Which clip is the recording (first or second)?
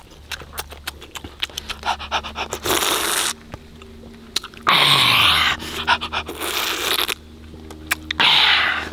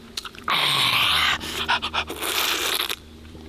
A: first